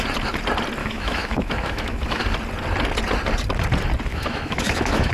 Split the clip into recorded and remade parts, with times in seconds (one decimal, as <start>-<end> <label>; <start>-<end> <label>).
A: 0.0-0.8 recorded; 0.8-2.2 remade; 2.2-4.1 recorded; 4.1-5.1 remade